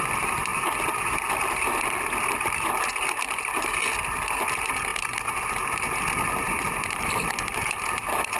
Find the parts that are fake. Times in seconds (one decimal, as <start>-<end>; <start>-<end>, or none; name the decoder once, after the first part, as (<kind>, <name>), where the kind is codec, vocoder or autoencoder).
none